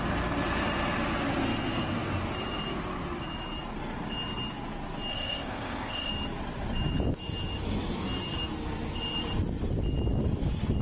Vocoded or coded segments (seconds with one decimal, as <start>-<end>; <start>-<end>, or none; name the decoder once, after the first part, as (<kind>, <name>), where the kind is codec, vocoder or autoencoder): 5.1-6.1 (codec, ZipCodec)